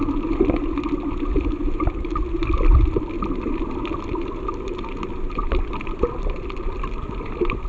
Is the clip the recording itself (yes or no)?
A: yes